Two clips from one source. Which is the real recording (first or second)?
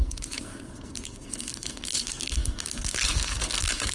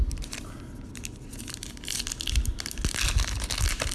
second